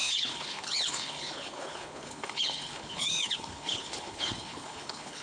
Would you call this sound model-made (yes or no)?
yes